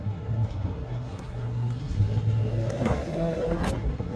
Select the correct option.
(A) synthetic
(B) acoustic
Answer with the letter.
A